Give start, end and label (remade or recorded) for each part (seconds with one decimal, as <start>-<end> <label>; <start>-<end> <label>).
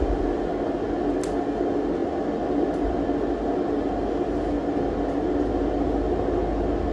0.0-6.9 recorded